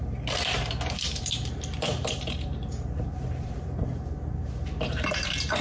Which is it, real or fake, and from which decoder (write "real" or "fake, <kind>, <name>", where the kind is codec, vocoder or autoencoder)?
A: fake, vocoder, BigVGAN v2